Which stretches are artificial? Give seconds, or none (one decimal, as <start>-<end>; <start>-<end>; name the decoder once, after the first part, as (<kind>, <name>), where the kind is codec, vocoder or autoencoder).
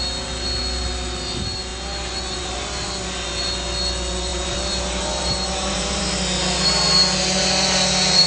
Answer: 4.3-6.0 (vocoder, BigVGAN v2)